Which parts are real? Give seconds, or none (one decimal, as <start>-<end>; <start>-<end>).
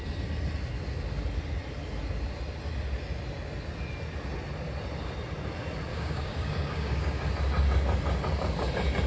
0.0-5.9; 7.3-9.1